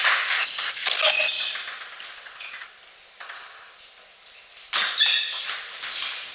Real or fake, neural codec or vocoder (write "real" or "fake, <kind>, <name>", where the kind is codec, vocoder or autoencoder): real